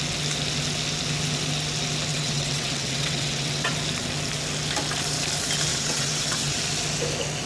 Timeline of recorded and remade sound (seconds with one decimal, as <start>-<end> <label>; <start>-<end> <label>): 0.0-2.1 recorded; 2.1-3.7 remade; 3.7-5.7 recorded; 5.7-6.6 remade; 6.6-7.5 recorded

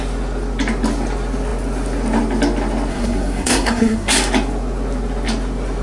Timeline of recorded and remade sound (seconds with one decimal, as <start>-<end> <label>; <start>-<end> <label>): 0.0-2.9 recorded; 2.9-4.1 remade; 4.1-5.8 recorded